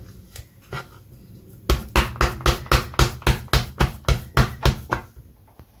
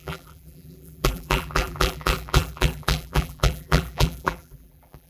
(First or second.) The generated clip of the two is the second